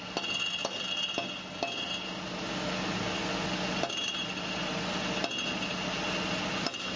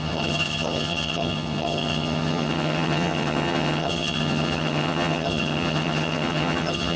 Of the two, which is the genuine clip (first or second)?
first